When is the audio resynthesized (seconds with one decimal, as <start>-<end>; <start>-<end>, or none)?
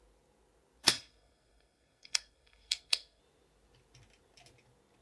0.8-3.2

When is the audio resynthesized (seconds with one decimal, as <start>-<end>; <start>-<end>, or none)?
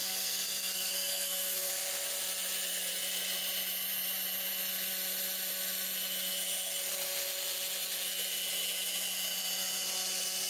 0.0-1.7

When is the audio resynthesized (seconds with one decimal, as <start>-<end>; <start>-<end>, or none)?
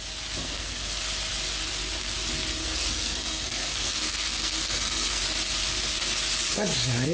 0.4-1.0; 2.5-5.2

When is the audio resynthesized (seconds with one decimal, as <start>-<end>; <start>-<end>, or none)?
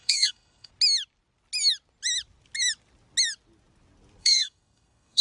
0.0-0.7; 4.2-5.2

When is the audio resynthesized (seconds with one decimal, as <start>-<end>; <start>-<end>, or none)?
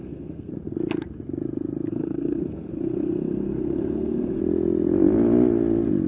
0.0-0.5; 1.9-4.4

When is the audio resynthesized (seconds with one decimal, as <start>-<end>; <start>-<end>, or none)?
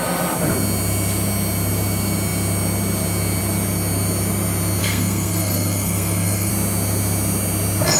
4.8-6.5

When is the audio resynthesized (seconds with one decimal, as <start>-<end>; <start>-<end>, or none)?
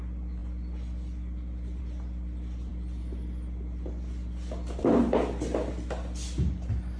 none